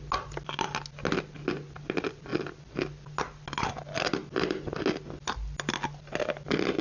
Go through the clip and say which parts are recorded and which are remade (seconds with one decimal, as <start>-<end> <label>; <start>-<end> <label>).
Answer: 0.0-6.8 recorded

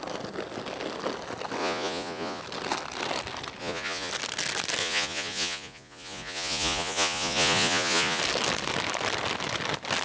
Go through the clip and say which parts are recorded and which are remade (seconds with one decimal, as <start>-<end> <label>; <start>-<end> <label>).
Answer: 0.0-1.6 recorded; 1.6-2.4 remade; 2.4-3.6 recorded; 3.6-4.1 remade; 4.1-4.8 recorded; 4.8-8.2 remade; 8.2-10.0 recorded

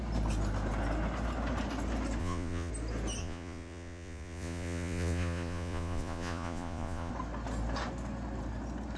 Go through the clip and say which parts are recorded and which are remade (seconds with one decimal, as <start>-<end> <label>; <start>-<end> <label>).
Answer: 0.0-2.2 recorded; 2.2-2.7 remade; 2.7-3.2 recorded; 3.2-7.1 remade; 7.1-9.0 recorded

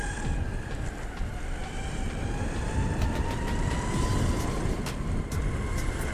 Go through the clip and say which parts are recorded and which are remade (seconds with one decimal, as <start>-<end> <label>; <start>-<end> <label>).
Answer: 0.0-6.1 recorded

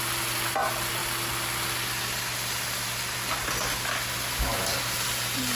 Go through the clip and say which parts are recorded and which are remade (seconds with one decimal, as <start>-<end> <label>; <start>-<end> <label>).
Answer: 0.0-5.6 recorded

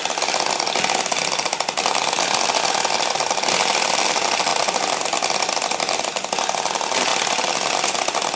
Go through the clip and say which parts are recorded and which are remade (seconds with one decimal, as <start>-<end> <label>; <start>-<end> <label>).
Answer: 0.0-8.4 recorded

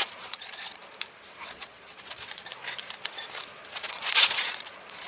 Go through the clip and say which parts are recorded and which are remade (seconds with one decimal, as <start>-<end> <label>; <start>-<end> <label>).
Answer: 0.0-0.8 remade; 0.8-1.5 recorded; 1.5-2.5 remade; 2.5-3.9 recorded; 3.9-5.1 remade